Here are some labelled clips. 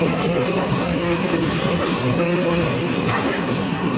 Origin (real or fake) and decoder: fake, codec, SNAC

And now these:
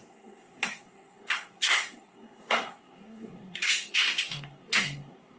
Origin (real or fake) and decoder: fake, codec, SNAC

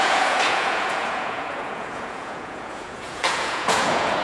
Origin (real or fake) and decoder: fake, vocoder, Vocos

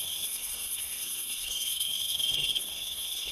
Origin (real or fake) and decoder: fake, codec, SNAC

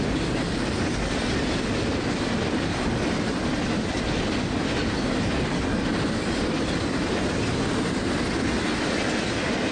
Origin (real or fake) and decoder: real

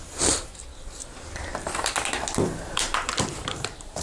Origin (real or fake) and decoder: fake, vocoder, BigVGAN v2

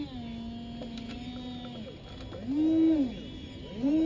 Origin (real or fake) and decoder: real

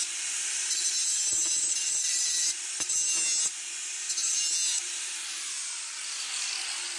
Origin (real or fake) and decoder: real